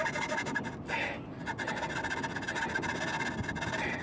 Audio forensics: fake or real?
real